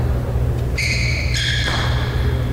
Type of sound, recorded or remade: recorded